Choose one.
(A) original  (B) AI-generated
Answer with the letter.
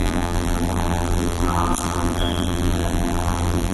B